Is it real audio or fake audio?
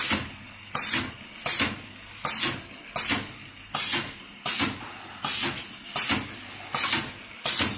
real